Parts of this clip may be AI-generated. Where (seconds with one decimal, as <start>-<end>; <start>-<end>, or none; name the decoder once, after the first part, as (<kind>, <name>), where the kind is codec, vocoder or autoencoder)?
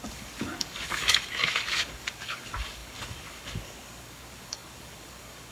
0.0-5.5 (codec, DAC)